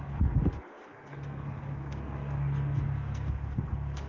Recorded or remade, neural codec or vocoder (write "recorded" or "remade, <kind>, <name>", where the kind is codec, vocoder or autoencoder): remade, codec, SNAC